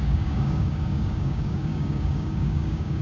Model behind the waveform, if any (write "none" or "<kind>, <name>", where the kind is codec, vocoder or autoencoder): codec, DAC